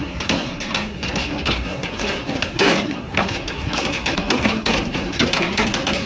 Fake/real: fake